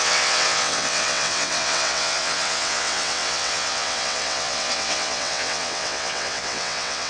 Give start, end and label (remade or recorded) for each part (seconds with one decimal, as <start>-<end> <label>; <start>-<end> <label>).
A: 0.0-7.1 remade